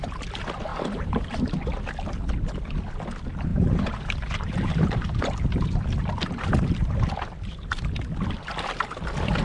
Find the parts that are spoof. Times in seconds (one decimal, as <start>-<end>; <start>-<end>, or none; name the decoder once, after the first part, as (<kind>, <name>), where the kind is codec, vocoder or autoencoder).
0.7-1.4 (vocoder, BigVGAN v2); 3.5-6.9